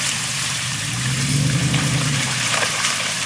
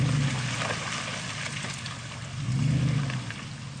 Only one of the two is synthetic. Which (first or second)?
first